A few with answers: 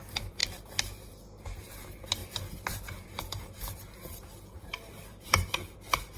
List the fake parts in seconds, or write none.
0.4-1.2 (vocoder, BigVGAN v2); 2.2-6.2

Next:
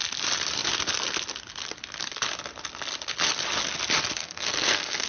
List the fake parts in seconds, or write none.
4.2-5.1 (codec, SNAC)